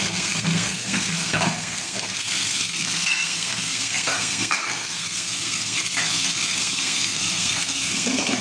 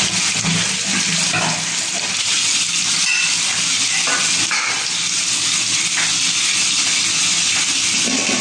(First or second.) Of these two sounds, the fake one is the first